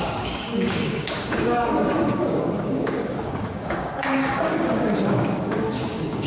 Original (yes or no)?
no